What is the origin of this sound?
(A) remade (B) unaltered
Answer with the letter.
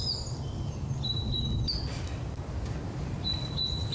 B